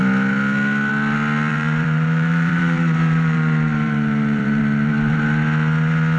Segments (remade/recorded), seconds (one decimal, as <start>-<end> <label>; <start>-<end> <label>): 0.0-1.5 recorded; 1.5-4.6 remade; 4.6-6.2 recorded

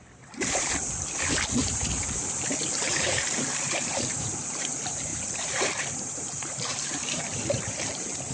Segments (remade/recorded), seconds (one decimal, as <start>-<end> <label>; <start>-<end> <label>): 0.0-0.8 remade; 0.8-1.7 recorded; 1.7-8.3 remade

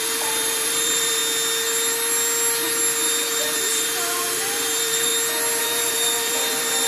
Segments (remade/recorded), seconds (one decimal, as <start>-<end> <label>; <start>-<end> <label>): 0.0-1.2 remade; 1.2-3.0 recorded; 3.0-5.1 remade; 5.1-5.6 recorded; 5.6-6.9 remade